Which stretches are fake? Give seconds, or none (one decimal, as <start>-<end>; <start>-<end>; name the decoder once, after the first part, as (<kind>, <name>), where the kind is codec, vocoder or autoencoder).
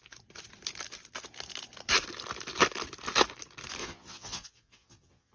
3.8-5.3 (vocoder, Vocos)